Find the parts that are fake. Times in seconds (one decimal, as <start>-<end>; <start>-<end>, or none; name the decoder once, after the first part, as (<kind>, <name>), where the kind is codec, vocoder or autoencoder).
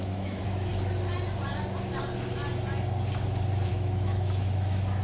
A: 0.0-0.7 (autoencoder, DAC-VAE); 3.7-5.0